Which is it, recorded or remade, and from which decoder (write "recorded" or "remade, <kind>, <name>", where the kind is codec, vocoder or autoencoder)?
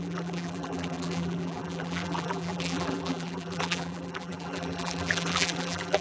remade, vocoder, BigVGAN v2